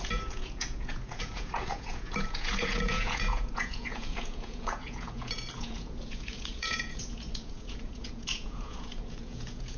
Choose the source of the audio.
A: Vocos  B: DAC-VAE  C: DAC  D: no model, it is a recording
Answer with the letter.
A